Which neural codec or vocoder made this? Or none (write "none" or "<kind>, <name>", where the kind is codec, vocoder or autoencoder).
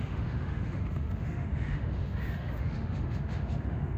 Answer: autoencoder, DAC-VAE